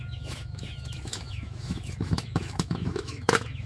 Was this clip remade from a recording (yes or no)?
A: yes